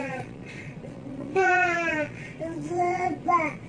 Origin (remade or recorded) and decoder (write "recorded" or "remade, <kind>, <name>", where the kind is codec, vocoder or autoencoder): remade, vocoder, Vocos